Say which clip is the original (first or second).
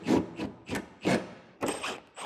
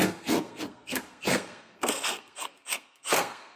first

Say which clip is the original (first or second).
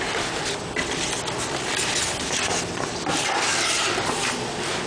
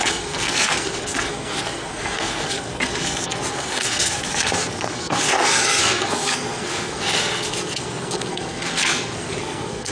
first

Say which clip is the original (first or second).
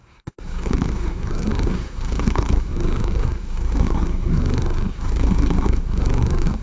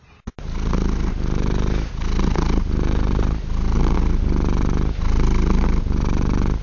second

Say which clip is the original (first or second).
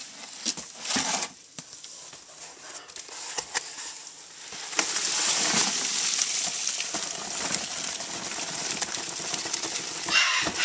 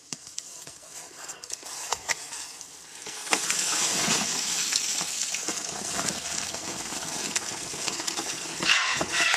first